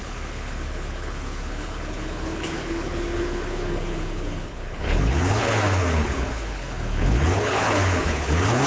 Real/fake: fake